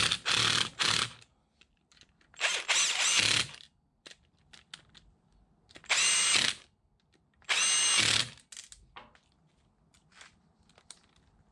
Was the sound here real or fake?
real